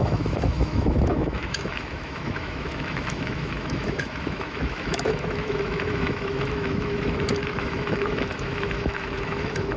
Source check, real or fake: fake